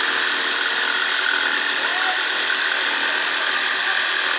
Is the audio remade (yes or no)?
no